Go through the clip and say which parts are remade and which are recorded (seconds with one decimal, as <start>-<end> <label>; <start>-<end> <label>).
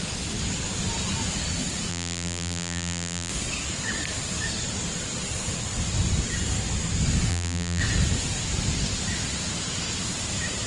0.0-1.9 recorded; 1.9-3.3 remade; 3.3-7.3 recorded; 7.3-7.8 remade; 7.8-10.7 recorded